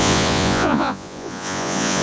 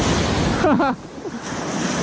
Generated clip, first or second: first